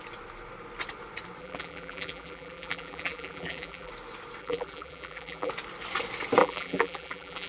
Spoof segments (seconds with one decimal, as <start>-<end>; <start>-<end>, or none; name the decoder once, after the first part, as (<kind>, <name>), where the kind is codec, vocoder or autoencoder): 1.4-3.9 (vocoder, BigVGAN v2); 4.4-5.5; 6.4-7.5